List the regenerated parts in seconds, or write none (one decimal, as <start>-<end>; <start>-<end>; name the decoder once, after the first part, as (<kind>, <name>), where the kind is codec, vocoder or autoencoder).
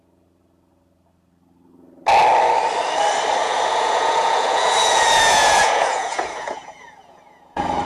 3.4-7.8 (vocoder, Vocos)